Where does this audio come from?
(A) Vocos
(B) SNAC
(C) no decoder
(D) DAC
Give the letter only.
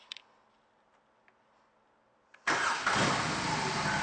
C